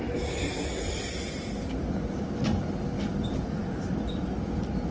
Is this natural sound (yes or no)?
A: yes